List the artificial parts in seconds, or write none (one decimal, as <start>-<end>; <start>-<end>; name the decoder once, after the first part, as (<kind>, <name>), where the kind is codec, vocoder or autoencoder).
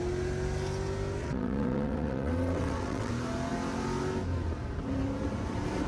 1.2-3.1 (vocoder, WaveNeXt)